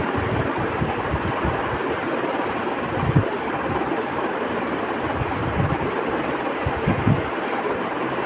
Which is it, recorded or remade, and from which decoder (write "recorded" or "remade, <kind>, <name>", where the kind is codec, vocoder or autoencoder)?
recorded